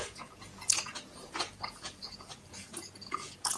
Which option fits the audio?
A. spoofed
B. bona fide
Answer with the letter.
A